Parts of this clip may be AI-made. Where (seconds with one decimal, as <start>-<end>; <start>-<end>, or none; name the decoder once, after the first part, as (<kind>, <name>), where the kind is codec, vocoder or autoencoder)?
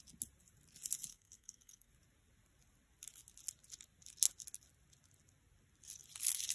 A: 1.1-1.9 (codec, SNAC)